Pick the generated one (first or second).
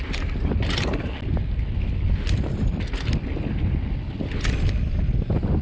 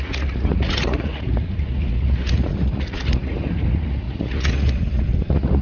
second